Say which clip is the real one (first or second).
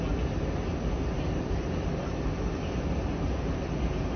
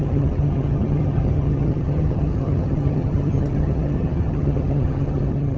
first